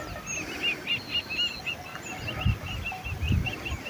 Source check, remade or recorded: recorded